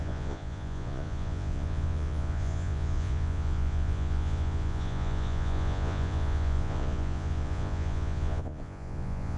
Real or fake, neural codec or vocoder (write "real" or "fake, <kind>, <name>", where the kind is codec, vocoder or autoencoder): fake, vocoder, Vocos